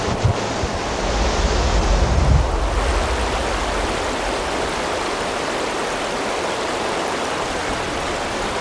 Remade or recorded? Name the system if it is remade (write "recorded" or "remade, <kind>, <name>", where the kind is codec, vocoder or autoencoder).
recorded